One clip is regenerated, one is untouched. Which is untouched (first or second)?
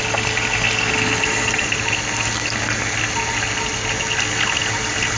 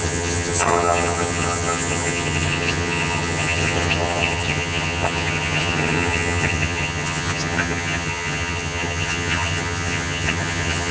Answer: first